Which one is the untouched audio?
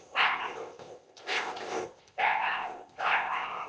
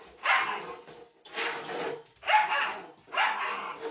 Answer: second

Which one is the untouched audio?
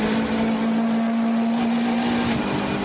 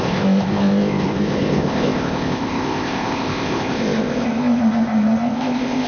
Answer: first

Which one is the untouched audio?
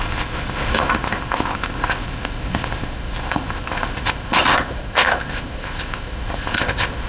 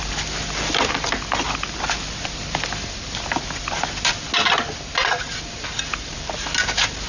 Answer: second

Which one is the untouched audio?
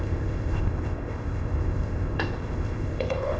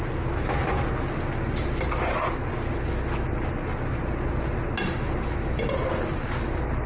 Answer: second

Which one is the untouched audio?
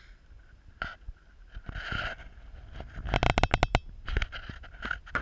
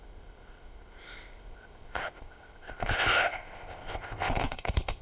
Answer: first